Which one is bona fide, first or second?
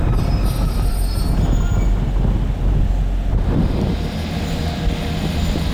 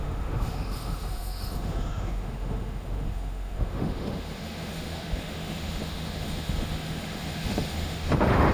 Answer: first